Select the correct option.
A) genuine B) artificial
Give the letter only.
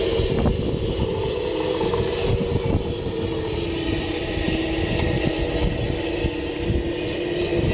A